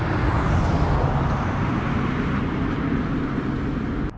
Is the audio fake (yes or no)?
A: no